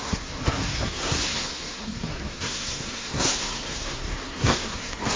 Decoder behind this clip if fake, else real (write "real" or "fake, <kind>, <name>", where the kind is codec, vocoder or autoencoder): fake, codec, SNAC